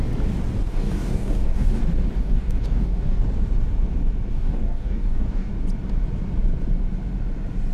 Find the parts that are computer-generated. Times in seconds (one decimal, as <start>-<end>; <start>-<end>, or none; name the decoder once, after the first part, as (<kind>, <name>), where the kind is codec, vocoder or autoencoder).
0.7-1.8 (codec, DAC); 2.2-3.2; 4.3-5.5